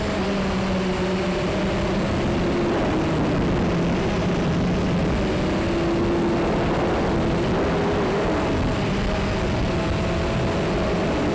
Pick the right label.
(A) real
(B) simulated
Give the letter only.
A